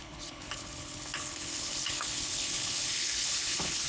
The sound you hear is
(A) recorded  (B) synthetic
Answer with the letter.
B